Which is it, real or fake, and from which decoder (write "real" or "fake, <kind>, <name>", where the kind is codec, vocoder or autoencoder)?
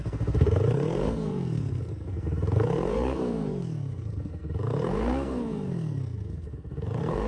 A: fake, codec, SNAC